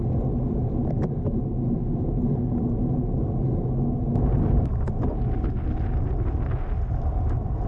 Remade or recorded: recorded